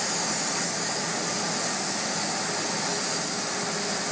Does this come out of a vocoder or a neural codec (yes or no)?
no